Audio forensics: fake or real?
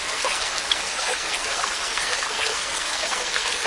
fake